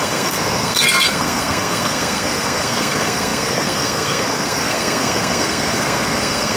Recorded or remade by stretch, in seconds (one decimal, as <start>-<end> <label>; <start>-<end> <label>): 0.0-6.6 remade